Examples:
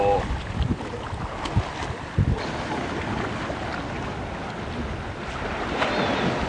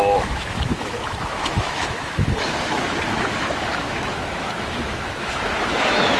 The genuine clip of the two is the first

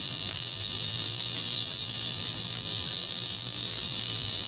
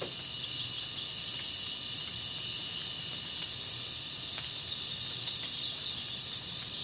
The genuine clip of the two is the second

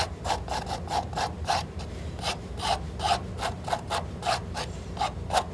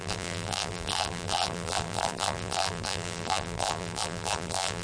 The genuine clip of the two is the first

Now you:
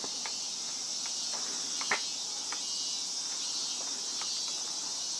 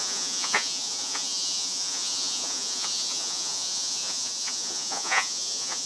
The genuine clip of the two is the first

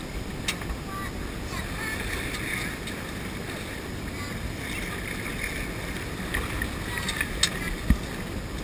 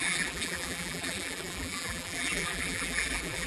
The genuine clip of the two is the first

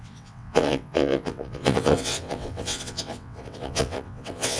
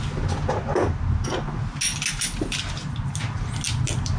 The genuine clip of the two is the second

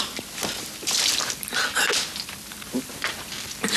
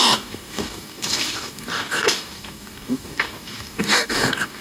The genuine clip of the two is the first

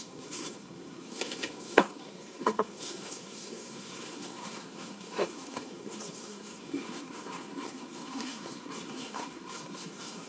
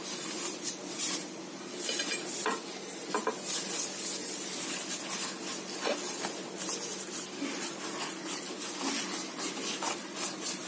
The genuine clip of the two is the second